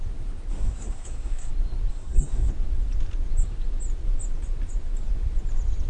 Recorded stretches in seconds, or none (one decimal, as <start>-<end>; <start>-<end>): 0.0-0.5; 1.5-1.9; 2.5-5.9